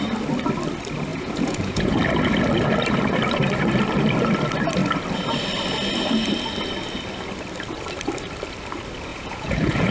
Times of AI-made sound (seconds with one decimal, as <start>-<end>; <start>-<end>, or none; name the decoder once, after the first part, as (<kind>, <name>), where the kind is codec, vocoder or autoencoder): 1.1-2.0 (vocoder, Vocos); 9.1-9.9